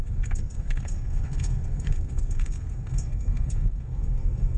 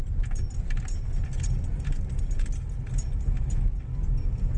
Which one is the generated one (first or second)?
first